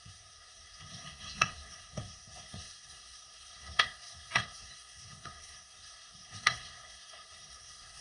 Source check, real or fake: fake